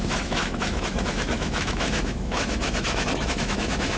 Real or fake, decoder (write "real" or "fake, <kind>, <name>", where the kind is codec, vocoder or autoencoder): fake, autoencoder, DAC-VAE